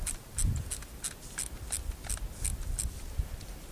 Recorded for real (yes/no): yes